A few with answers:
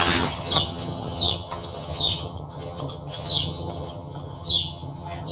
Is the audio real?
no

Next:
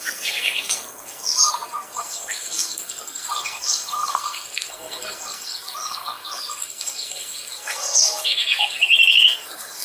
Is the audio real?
no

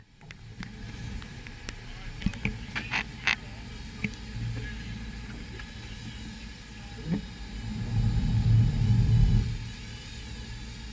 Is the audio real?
yes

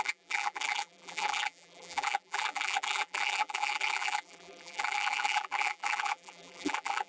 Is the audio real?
no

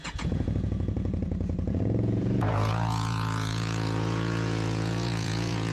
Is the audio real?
no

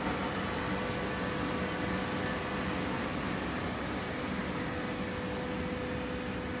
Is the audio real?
yes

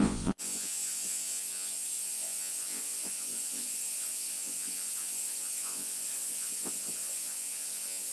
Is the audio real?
no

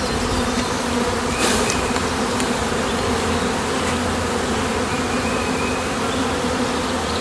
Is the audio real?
yes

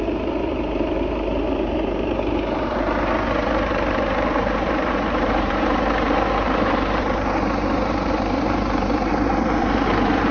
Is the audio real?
no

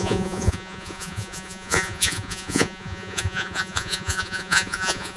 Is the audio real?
no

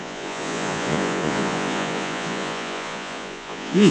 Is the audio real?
no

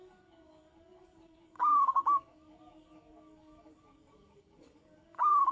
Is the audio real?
no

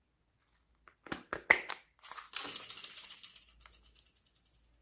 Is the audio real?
yes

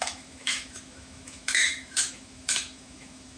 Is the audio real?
no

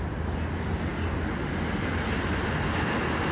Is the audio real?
yes